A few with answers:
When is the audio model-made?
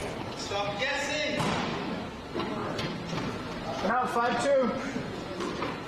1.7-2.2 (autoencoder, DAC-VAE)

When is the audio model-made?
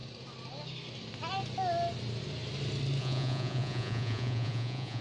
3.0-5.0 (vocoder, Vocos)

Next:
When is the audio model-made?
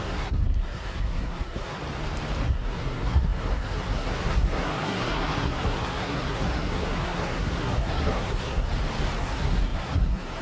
0.0-1.8 (codec, SNAC); 2.4-8.7; 9.2-10.4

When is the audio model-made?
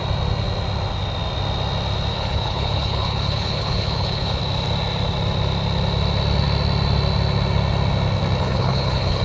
2.1-4.4 (codec, HILCodec); 8.4-9.2